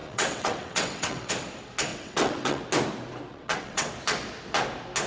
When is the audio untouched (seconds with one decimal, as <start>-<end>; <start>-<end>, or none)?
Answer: 1.3-1.9; 2.6-3.3; 3.9-5.1